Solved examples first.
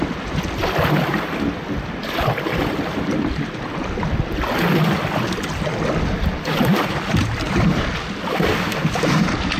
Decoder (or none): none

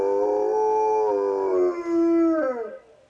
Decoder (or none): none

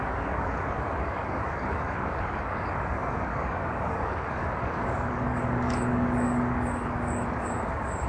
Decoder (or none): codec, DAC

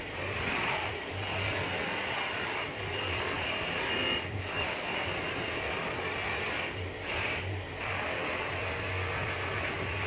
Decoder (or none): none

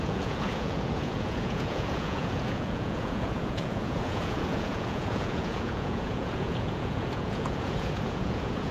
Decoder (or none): vocoder, Vocos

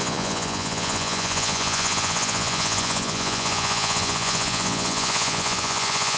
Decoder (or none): vocoder, Vocos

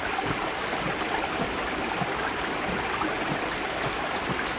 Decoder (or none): none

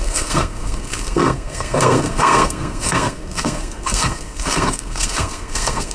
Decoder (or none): codec, SNAC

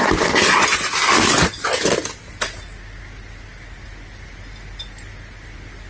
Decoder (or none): none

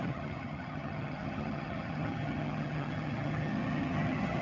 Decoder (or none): vocoder, HiFi-GAN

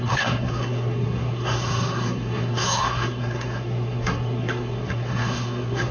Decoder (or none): codec, SNAC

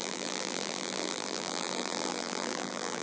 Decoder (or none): vocoder, BigVGAN v2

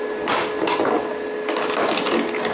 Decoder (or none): none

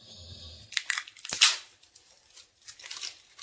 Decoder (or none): none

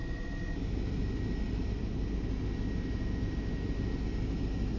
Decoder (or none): none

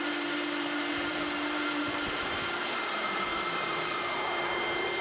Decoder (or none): vocoder, BigVGAN v2